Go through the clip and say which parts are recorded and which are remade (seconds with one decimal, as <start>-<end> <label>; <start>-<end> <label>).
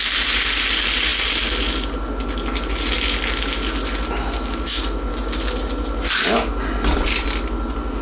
0.0-8.0 recorded